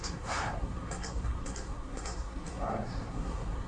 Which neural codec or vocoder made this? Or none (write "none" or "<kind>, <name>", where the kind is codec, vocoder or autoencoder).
codec, SNAC